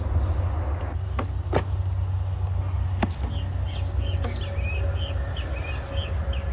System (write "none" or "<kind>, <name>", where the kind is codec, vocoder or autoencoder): none